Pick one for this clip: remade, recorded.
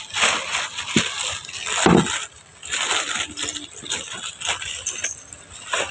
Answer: recorded